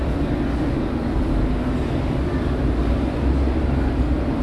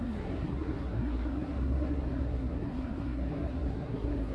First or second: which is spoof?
second